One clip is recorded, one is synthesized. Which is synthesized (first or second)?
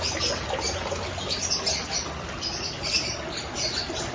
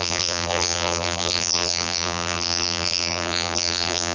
second